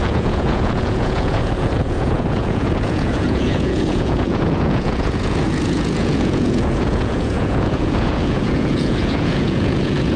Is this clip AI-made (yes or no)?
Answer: yes